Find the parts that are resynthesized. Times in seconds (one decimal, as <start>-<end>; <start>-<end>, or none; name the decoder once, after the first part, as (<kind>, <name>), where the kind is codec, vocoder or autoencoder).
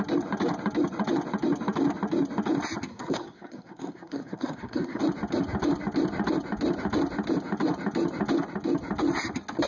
2.9-5.0 (codec, SNAC)